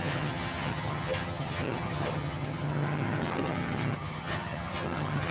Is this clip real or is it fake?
fake